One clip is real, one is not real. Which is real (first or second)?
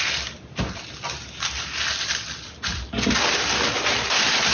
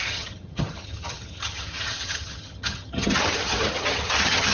first